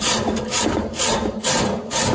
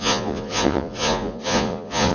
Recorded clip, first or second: first